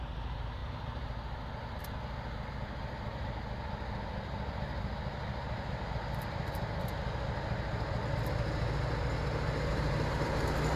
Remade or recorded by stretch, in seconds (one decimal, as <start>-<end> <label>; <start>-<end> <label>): 0.0-9.7 recorded; 9.7-10.8 remade